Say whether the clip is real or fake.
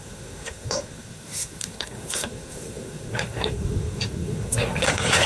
fake